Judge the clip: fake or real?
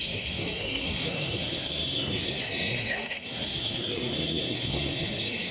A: fake